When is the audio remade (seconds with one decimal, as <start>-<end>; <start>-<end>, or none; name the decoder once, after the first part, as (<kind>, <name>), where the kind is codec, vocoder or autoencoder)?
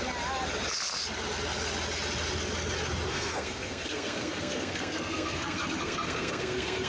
3.1-6.9 (codec, SNAC)